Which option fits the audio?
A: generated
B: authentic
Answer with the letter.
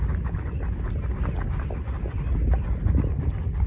B